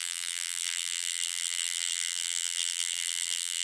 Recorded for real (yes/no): no